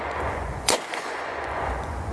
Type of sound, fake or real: fake